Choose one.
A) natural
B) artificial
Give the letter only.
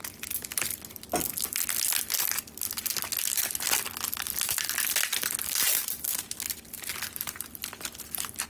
A